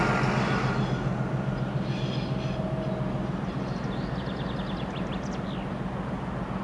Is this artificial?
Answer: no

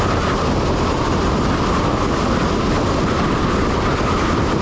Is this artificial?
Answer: no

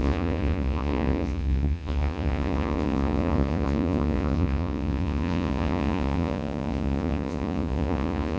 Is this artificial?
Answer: yes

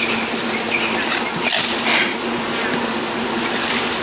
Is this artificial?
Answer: no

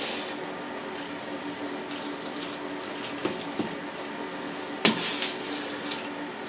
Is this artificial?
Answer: no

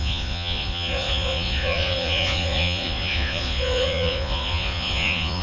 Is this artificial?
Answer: yes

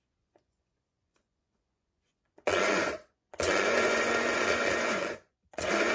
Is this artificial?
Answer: yes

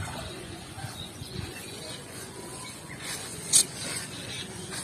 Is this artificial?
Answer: yes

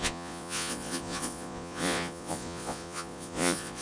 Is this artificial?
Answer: yes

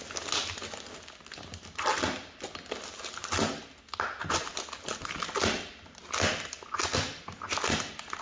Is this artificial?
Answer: no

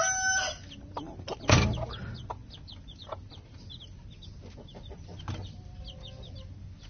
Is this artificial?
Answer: no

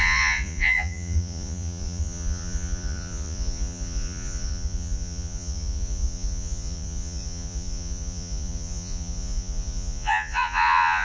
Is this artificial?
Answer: yes